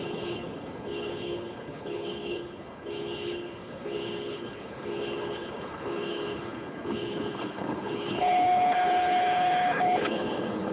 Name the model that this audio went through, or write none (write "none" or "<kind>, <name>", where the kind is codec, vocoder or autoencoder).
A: codec, HILCodec